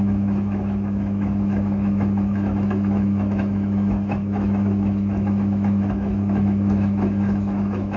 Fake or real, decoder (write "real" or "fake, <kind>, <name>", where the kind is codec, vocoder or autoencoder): fake, autoencoder, DAC-VAE